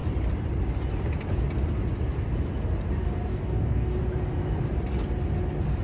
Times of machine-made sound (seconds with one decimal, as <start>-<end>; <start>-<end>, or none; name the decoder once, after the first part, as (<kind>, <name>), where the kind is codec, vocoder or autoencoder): 3.3-3.9 (codec, DAC)